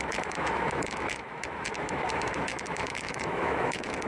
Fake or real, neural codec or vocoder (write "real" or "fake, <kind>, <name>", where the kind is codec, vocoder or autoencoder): fake, autoencoder, DAC-VAE